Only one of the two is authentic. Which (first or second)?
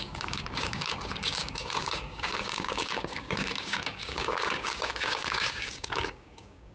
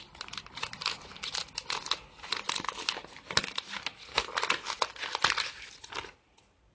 second